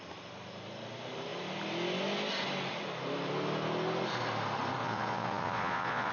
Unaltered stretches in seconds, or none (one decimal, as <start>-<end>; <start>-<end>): 0.0-4.8